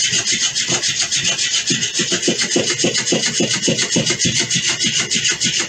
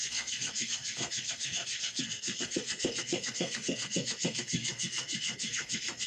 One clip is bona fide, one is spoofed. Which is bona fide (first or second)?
first